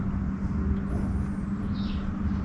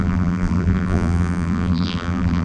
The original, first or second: first